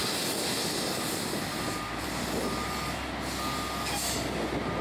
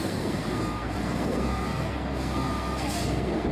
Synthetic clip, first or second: second